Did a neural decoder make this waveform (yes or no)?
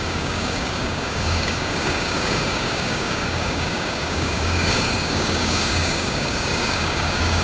yes